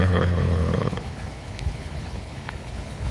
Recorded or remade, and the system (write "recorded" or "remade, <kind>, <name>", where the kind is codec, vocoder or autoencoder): remade, codec, HILCodec